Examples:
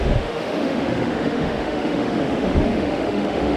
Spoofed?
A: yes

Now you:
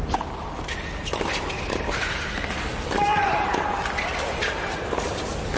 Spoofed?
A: no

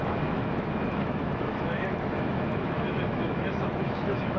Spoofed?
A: yes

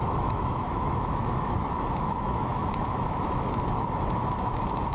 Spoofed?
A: yes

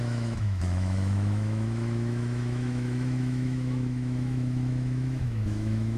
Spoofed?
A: yes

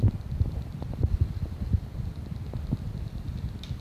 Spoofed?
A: no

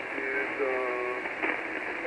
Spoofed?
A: no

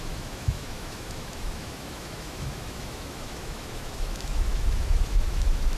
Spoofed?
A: yes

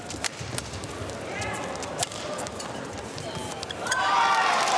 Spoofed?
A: no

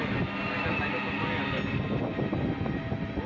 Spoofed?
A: no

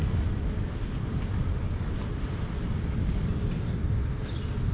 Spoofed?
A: no